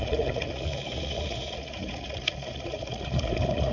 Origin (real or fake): fake